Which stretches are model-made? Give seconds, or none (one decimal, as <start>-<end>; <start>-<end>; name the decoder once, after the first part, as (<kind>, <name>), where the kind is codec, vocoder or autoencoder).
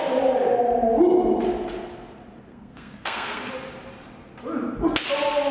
2.5-3.5 (codec, SNAC)